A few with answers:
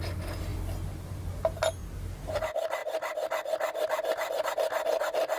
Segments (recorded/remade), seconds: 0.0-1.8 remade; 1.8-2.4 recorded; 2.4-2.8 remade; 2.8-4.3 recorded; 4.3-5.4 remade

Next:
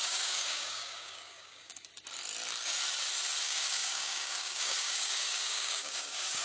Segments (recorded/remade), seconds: 0.0-1.9 remade; 1.9-3.4 recorded; 3.4-6.4 remade

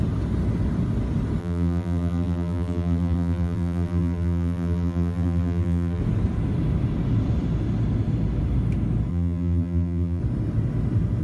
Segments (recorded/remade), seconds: 0.0-1.4 recorded; 1.4-6.0 remade; 6.0-9.1 recorded; 9.1-10.2 remade; 10.2-11.2 recorded

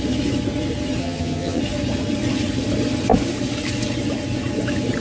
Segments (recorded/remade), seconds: 0.0-1.0 recorded; 1.0-1.6 remade; 1.6-5.0 recorded

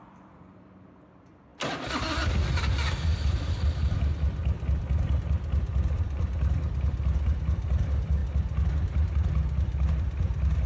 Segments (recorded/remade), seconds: 0.0-1.5 remade; 1.5-2.7 recorded; 2.7-8.2 remade; 8.2-9.9 recorded; 9.9-10.7 remade

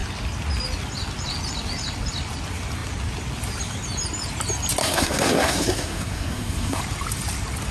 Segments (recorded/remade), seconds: 0.0-4.8 recorded; 4.8-6.8 remade; 6.8-7.7 recorded

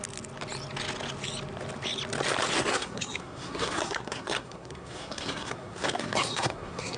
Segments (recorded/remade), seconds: 0.0-2.7 recorded; 2.7-7.0 remade